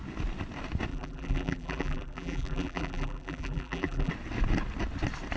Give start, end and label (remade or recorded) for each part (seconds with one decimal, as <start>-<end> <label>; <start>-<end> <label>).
0.0-0.9 recorded; 0.9-4.1 remade; 4.1-5.4 recorded